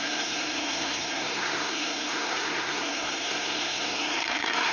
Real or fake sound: fake